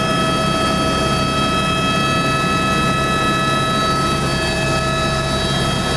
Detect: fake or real real